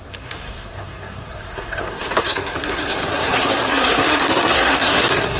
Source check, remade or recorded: remade